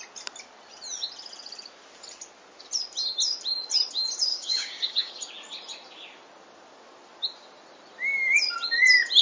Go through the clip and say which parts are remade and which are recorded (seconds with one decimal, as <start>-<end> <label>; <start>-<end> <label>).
0.0-4.3 recorded; 4.3-5.1 remade; 5.1-9.2 recorded